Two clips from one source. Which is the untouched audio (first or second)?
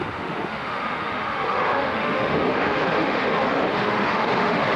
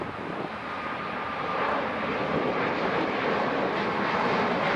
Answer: second